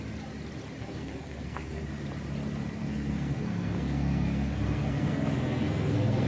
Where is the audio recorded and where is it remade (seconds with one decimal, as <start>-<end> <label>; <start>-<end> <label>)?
0.0-0.8 recorded; 0.8-1.8 remade; 1.8-2.8 recorded; 2.8-6.3 remade

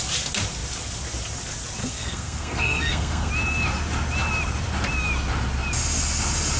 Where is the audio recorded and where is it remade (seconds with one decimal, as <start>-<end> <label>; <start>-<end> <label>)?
0.0-1.8 recorded; 1.8-3.3 remade; 3.3-6.6 recorded

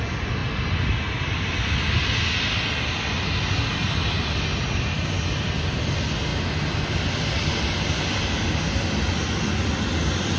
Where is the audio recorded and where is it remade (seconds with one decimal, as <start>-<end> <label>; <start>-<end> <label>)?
0.0-10.4 recorded